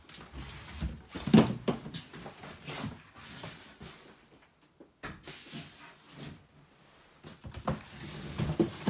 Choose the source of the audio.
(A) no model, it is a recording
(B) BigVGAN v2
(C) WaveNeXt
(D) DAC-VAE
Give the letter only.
A